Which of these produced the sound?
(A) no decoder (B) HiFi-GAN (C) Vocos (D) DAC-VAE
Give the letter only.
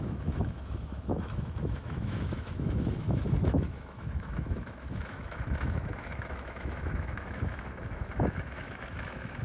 D